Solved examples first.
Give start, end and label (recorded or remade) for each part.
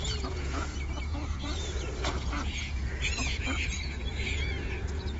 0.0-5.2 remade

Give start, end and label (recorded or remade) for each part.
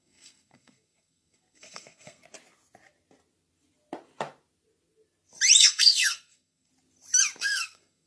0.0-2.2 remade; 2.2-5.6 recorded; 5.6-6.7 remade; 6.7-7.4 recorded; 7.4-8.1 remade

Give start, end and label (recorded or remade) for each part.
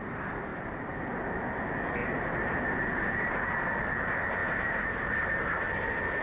0.0-0.5 recorded; 0.5-1.0 remade; 1.0-2.0 recorded; 2.0-3.8 remade; 3.8-4.4 recorded; 4.4-5.5 remade; 5.5-6.2 recorded